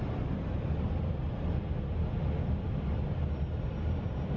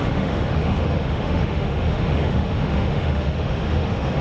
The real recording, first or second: first